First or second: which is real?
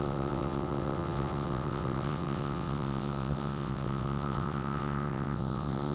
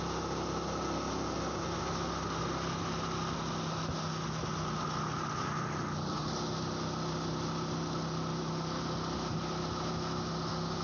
second